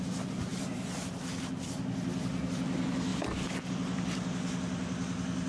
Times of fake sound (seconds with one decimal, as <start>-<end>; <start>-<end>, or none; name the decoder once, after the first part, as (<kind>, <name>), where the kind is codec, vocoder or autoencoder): none